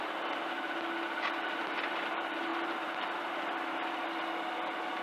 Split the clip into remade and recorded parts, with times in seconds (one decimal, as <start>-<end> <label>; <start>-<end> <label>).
0.0-2.5 recorded; 2.5-3.3 remade; 3.3-5.0 recorded